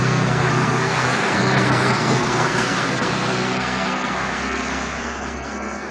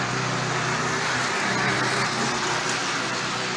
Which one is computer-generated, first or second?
first